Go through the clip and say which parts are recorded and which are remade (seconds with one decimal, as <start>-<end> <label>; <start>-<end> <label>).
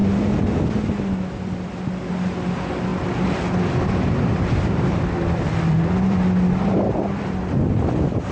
0.0-2.9 recorded; 2.9-7.9 remade; 7.9-8.3 recorded